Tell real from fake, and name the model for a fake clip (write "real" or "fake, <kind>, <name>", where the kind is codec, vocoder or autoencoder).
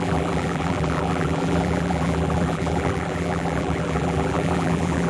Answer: fake, vocoder, BigVGAN v2